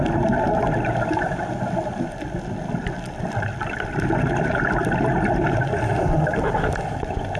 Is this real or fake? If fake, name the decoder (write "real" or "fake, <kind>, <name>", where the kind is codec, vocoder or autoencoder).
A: real